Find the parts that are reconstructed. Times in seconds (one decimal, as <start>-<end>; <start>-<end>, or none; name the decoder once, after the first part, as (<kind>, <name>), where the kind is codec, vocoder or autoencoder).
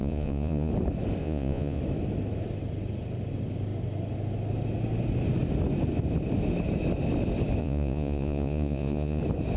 0.0-0.7 (vocoder, Vocos); 1.2-1.8; 7.6-9.2